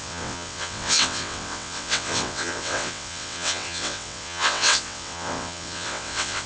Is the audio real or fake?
fake